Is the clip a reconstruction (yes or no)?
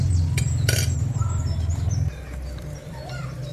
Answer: yes